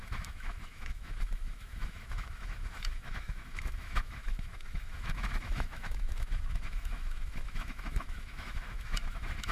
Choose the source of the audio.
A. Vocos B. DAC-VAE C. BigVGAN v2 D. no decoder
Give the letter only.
B